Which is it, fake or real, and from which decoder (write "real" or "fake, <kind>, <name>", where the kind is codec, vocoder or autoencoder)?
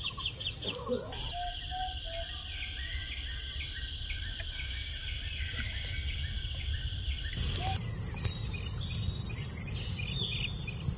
real